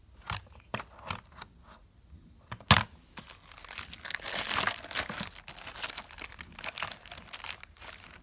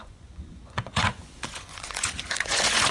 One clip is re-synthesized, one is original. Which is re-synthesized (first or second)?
second